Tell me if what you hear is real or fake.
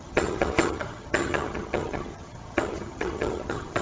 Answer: fake